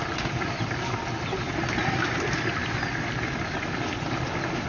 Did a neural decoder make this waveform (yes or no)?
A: no